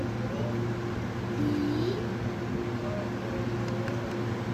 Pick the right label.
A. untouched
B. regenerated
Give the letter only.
A